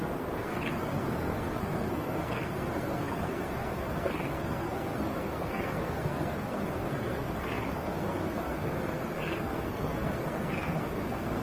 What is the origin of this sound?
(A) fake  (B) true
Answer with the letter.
A